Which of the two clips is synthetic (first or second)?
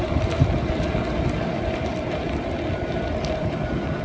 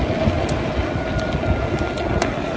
first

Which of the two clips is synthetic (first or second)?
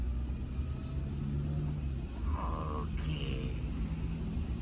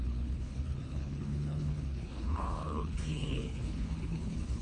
second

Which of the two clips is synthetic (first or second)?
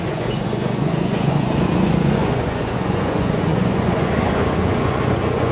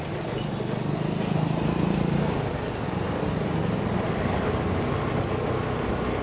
first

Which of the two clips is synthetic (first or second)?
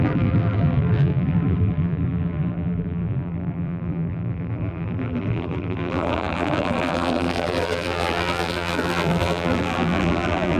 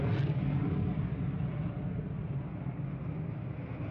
first